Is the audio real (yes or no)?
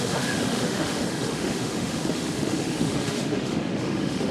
no